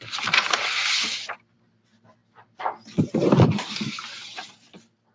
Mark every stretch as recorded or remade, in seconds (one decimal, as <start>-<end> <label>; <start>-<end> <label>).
0.0-5.1 remade